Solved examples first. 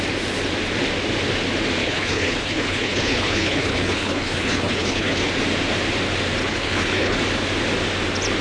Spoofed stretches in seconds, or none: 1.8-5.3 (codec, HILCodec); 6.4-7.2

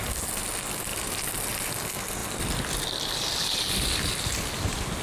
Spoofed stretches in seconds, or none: 0.9-1.7 (vocoder, BigVGAN v2); 2.2-4.1

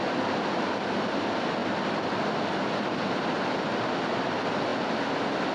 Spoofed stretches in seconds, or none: none

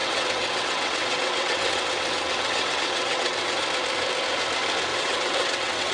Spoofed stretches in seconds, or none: 0.0-3.5 (vocoder, WaveNeXt); 4.9-5.9